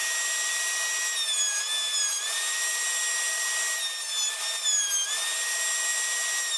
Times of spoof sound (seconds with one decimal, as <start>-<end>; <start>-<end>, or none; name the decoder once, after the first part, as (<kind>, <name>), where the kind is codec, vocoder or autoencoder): none